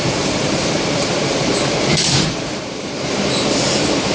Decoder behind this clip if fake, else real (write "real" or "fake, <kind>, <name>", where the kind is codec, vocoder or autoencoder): fake, vocoder, BigVGAN v2